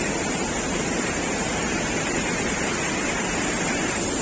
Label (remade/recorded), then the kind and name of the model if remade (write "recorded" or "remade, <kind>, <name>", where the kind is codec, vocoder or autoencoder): recorded